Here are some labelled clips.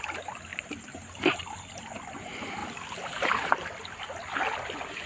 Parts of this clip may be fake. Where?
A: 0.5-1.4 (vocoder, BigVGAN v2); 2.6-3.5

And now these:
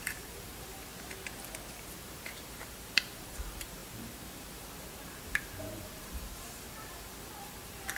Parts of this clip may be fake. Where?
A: 0.0-0.9 (vocoder, BigVGAN v2); 1.7-8.0

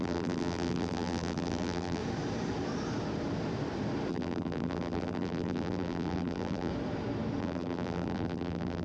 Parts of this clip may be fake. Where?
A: 0.0-2.0 (vocoder, BigVGAN v2); 4.1-6.7; 7.4-8.8

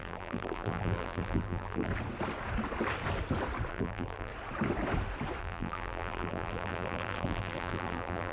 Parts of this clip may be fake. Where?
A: 0.0-1.9 (vocoder, BigVGAN v2); 3.7-4.3; 5.4-8.3

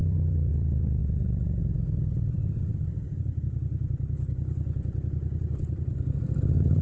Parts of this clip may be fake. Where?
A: 0.0-6.8 (vocoder, BigVGAN v2)

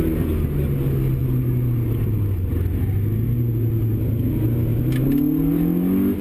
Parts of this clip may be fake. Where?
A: 1.2-2.8 (vocoder, BigVGAN v2)

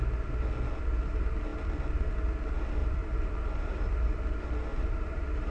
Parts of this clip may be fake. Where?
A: 2.8-3.9 (vocoder, BigVGAN v2); 4.7-5.5

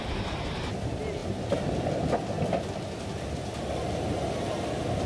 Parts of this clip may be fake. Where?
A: none